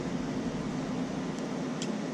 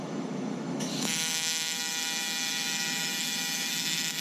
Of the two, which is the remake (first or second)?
second